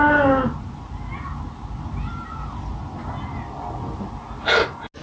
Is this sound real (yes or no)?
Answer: yes